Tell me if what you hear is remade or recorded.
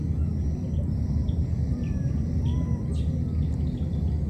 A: recorded